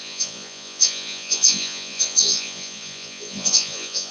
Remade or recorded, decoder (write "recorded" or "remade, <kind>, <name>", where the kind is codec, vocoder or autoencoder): remade, vocoder, Vocos